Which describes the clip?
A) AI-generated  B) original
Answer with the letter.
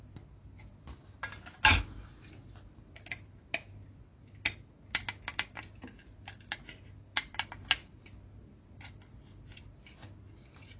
B